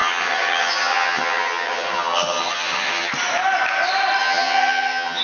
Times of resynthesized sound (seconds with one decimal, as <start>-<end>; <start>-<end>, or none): 0.0-3.1; 4.2-5.2